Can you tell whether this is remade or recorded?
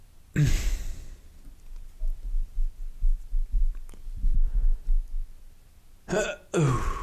recorded